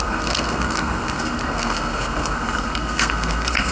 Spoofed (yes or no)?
yes